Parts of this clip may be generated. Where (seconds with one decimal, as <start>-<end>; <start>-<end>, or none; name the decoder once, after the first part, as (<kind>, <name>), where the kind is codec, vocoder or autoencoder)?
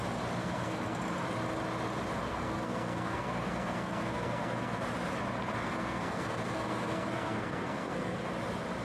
0.4-1.0 (codec, SNAC); 2.3-4.8; 5.6-8.3